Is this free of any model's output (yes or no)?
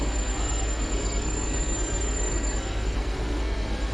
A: no